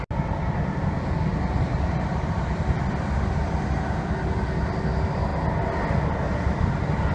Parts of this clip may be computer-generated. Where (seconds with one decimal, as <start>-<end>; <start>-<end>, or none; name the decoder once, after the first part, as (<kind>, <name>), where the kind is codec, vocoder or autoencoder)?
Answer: none